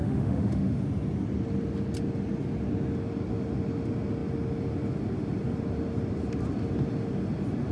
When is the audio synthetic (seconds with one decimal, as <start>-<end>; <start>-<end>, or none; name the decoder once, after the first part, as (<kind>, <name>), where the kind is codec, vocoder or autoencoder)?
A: 0.0-0.8 (autoencoder, DAC-VAE)